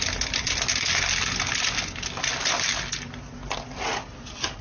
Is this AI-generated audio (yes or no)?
no